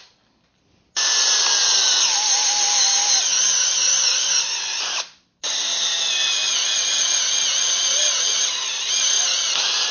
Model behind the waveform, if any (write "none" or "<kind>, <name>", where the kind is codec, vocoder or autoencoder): none